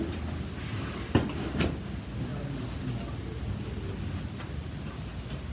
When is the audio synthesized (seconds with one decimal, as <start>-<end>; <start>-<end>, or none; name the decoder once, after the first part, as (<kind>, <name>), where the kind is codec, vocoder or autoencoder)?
none